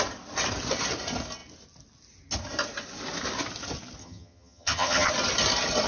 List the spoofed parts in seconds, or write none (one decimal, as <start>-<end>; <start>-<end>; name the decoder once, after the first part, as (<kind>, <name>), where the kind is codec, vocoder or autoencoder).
4.0-5.1 (vocoder, HiFi-GAN)